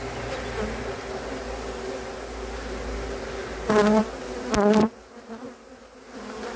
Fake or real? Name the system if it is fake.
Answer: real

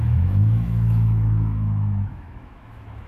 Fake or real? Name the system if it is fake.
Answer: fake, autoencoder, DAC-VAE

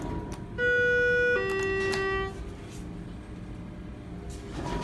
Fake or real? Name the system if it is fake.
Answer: real